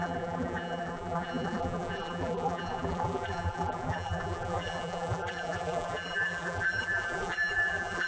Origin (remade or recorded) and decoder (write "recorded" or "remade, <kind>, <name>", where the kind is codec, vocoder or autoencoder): remade, vocoder, BigVGAN v2